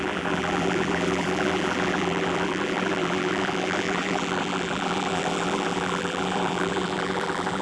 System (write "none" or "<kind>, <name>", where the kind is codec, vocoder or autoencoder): vocoder, BigVGAN v2